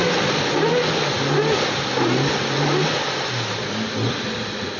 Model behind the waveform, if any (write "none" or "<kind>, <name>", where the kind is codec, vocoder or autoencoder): none